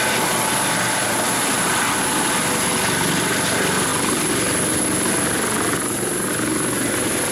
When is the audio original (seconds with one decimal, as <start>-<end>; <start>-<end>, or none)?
0.0-7.3